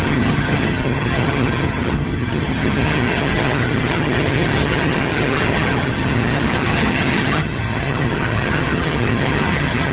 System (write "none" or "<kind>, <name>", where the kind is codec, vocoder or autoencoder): vocoder, HiFi-GAN